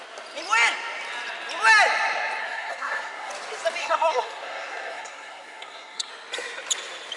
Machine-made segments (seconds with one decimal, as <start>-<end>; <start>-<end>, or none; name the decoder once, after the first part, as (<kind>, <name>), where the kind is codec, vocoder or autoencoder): 2.4-3.3 (codec, SNAC); 3.8-6.1